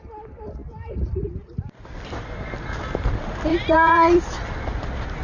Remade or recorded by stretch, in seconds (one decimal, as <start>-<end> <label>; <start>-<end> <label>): 0.0-3.5 recorded; 3.5-4.2 remade; 4.2-5.2 recorded